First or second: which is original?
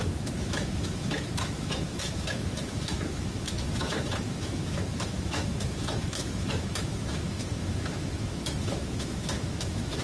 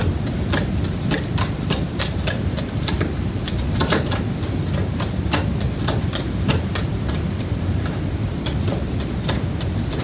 second